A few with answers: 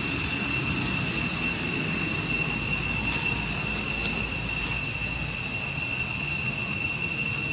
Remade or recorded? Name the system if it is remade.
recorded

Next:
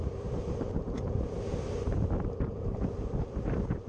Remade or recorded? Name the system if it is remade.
remade, vocoder, BigVGAN v2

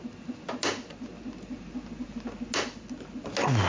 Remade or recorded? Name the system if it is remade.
recorded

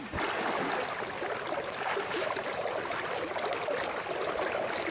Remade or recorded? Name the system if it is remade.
recorded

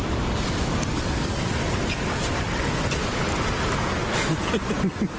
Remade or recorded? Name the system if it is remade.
recorded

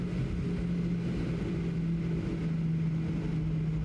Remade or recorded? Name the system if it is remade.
recorded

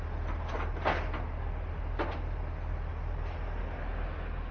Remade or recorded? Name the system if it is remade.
recorded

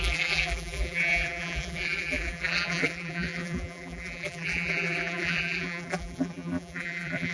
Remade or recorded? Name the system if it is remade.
remade, vocoder, BigVGAN v2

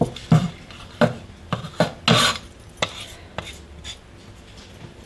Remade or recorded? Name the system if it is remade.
recorded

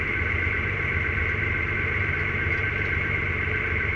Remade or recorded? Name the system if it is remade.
remade, vocoder, BigVGAN v2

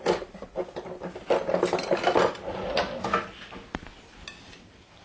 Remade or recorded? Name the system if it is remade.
recorded